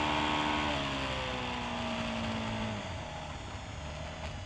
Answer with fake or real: real